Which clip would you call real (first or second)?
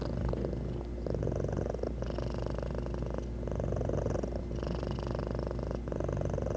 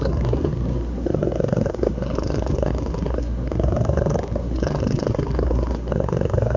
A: first